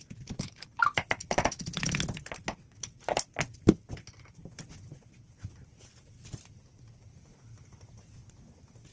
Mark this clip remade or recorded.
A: recorded